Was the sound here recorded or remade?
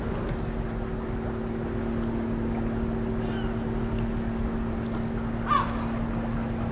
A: recorded